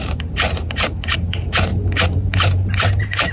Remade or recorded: remade